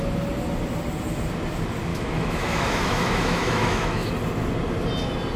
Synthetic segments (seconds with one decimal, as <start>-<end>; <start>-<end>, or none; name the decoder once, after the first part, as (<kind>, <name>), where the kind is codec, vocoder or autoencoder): 1.9-4.1 (autoencoder, DAC-VAE)